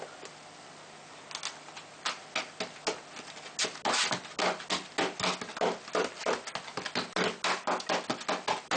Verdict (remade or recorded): recorded